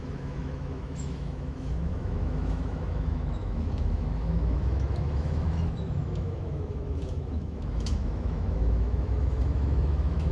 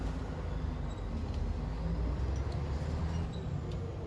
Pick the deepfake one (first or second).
first